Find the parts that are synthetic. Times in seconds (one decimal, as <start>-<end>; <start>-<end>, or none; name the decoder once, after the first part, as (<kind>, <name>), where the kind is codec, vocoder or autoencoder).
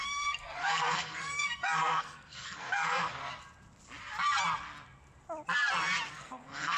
0.0-3.2 (codec, SNAC); 6.1-6.8